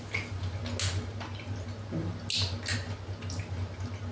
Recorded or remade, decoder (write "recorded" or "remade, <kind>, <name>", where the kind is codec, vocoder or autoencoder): recorded